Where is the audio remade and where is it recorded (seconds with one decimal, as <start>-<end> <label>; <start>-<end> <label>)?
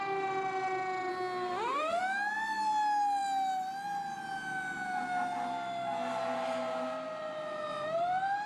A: 0.0-1.1 recorded; 1.1-2.0 remade; 2.0-8.5 recorded